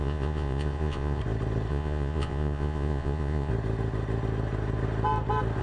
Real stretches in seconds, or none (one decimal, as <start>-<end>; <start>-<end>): 1.2-1.7; 3.5-5.6